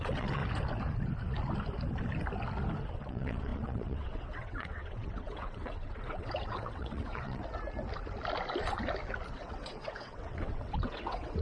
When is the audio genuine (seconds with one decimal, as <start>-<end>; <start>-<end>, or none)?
0.4-2.9; 7.4-9.3